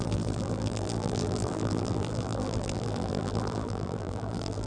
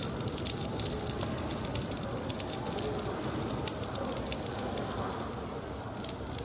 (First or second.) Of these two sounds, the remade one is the first